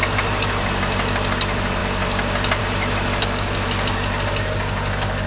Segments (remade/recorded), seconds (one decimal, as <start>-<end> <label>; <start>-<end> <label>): 0.0-5.3 recorded